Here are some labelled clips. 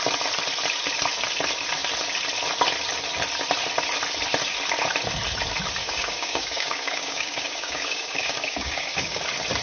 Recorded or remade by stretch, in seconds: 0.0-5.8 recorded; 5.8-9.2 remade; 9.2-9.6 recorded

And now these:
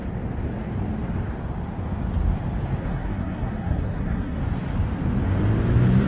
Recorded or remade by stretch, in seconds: 0.0-2.8 recorded; 2.8-4.4 remade; 4.4-6.1 recorded

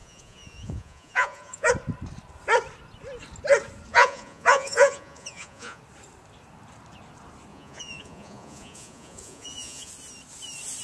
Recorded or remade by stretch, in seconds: 0.0-1.7 remade; 1.7-3.9 recorded; 3.9-5.8 remade; 5.8-7.5 recorded; 7.5-9.9 remade; 9.9-10.8 recorded

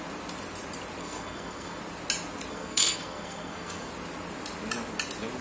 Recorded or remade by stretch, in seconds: 0.0-1.0 recorded; 1.0-1.8 remade; 1.8-2.5 recorded; 2.5-3.9 remade; 3.9-5.4 recorded

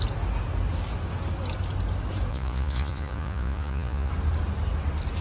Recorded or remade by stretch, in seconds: 0.0-2.3 recorded; 2.3-4.1 remade; 4.1-5.2 recorded

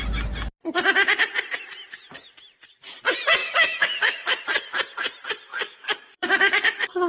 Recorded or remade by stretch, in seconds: 0.0-3.4 recorded; 3.4-4.4 remade; 4.4-5.5 recorded; 5.5-7.1 remade